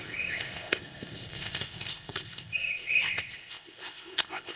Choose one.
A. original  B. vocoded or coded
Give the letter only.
B